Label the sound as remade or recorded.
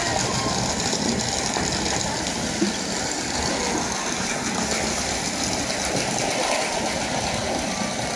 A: recorded